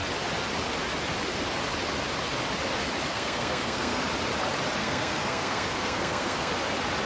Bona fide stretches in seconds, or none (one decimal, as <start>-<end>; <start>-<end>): 0.0-3.1; 4.0-4.8; 6.5-7.1